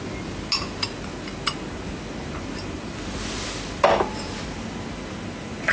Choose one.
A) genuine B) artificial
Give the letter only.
A